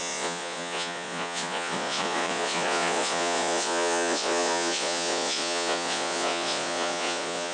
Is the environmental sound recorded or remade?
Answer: remade